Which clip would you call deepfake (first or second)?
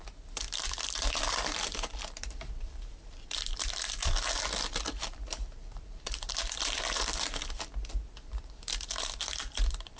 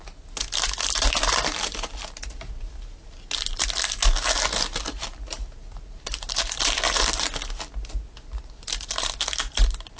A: first